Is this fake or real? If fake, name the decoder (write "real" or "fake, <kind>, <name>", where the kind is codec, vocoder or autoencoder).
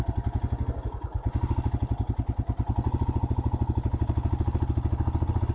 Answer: real